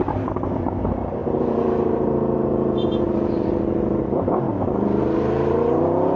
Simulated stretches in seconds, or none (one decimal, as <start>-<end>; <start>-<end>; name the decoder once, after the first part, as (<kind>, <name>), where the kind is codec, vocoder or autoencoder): 0.0-6.2 (vocoder, BigVGAN v2)